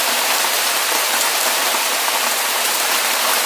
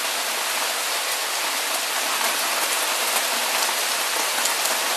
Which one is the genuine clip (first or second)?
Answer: second